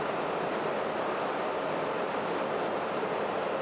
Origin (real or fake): real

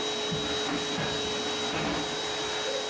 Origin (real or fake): real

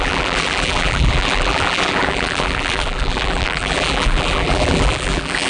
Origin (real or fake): fake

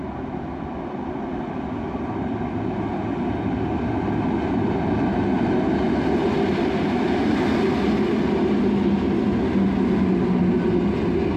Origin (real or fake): real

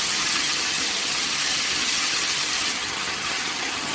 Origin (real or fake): fake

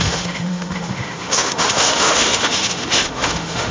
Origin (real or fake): fake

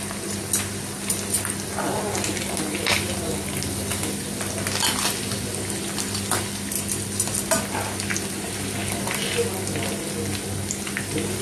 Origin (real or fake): real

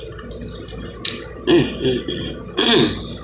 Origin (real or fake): real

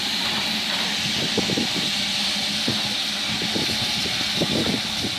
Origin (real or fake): real